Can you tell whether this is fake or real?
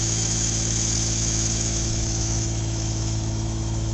fake